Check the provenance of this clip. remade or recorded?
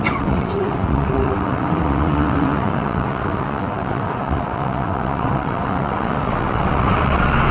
remade